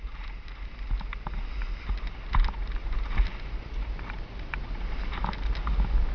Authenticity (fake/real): real